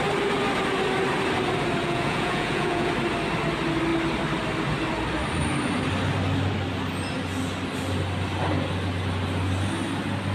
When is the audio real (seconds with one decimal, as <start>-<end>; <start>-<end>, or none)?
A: 0.0-1.8; 2.9-10.3